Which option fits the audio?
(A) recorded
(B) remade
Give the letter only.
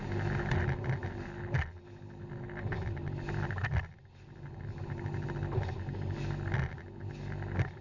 A